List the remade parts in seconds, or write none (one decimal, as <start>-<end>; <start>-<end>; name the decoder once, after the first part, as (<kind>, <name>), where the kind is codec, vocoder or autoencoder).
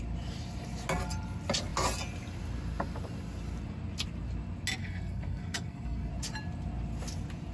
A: 4.8-6.1 (codec, SNAC)